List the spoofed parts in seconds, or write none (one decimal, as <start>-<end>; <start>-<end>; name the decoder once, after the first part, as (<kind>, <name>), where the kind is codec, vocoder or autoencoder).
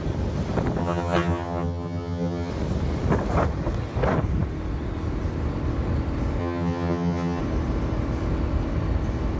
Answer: 0.8-2.5 (vocoder, HiFi-GAN); 6.4-7.4